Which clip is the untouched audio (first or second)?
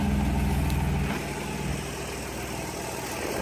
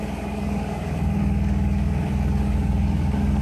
first